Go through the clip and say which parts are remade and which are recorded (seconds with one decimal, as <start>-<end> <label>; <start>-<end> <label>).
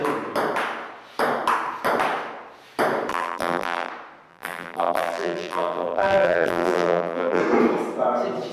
0.0-3.1 recorded; 3.1-3.9 remade; 3.9-4.3 recorded; 4.3-7.4 remade; 7.4-8.5 recorded